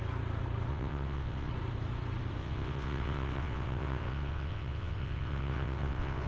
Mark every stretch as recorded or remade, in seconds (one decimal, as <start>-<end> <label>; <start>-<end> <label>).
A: 0.0-0.7 recorded; 0.7-1.5 remade; 1.5-2.4 recorded; 2.4-6.3 remade